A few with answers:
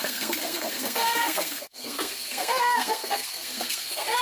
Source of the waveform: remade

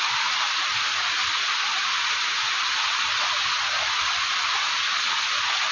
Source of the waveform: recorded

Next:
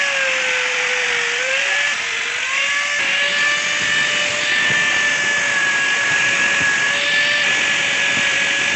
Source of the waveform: recorded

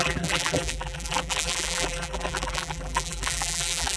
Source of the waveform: remade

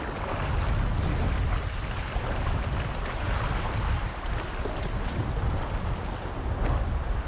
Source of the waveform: recorded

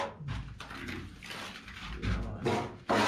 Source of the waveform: recorded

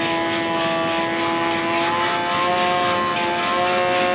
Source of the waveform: recorded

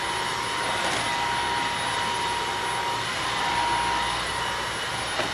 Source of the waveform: recorded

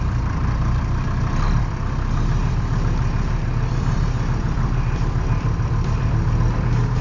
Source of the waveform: remade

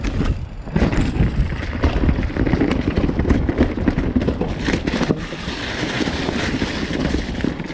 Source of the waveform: recorded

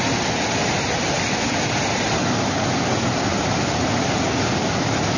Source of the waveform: recorded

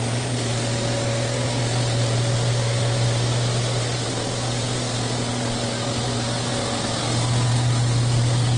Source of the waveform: recorded